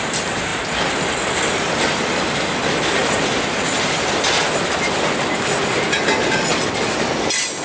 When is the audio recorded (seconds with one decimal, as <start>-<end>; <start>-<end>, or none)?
0.0-7.6